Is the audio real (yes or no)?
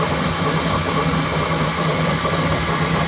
yes